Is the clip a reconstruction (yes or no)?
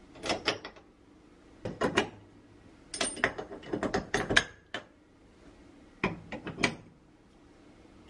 no